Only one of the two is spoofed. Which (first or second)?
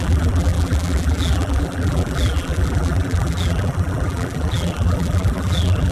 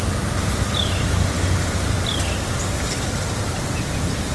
first